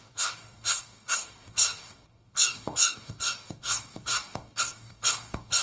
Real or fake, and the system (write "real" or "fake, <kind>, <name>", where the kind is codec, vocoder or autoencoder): fake, codec, DAC